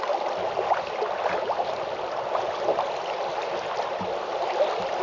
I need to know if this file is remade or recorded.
recorded